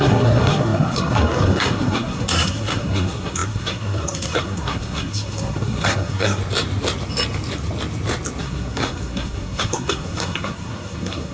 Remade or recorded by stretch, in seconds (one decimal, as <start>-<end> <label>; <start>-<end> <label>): 0.0-6.4 remade; 6.4-8.4 recorded; 8.4-11.3 remade